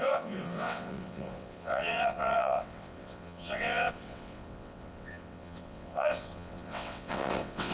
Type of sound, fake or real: fake